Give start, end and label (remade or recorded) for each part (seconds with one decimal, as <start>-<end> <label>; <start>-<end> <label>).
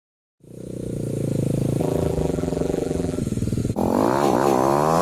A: 0.0-1.8 recorded; 1.8-3.2 remade; 3.2-5.0 recorded